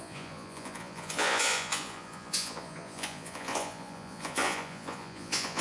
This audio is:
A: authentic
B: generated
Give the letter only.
B